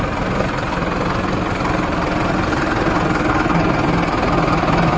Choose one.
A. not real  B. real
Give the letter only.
B